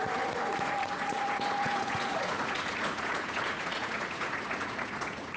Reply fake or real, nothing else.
fake